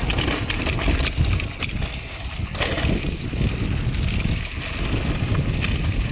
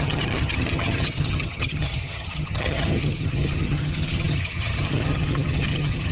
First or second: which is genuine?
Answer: first